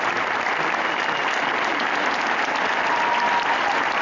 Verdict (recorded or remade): recorded